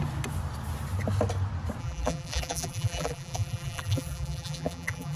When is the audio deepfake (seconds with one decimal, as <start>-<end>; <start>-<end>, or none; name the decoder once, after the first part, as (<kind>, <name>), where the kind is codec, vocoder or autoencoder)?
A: 1.8-5.2 (vocoder, BigVGAN v2)